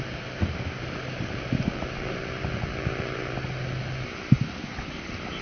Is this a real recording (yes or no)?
yes